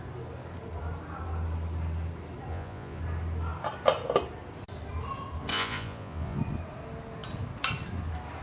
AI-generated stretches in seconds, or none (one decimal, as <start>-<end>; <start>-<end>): 2.5-3.0; 5.5-6.4

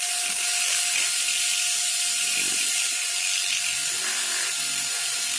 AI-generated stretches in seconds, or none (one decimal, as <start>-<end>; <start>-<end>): 1.9-3.2; 4.0-4.6

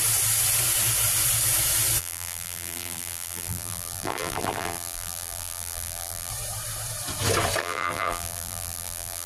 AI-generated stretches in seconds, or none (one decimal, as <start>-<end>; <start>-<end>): 2.0-6.3; 7.6-9.3